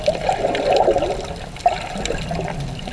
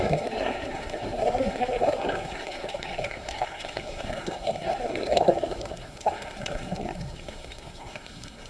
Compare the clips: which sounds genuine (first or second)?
first